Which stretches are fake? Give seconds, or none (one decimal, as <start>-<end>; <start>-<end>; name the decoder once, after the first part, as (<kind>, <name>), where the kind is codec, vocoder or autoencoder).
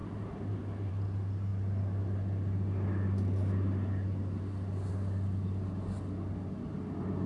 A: none